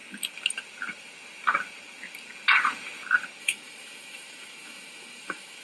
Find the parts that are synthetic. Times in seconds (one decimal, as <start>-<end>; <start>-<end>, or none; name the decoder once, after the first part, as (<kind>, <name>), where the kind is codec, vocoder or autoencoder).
3.4-5.6 (autoencoder, DAC-VAE)